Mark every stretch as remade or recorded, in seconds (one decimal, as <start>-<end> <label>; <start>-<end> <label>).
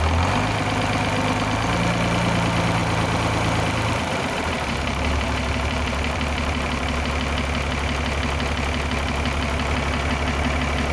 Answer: 0.0-2.8 recorded; 2.8-7.1 remade; 7.1-10.9 recorded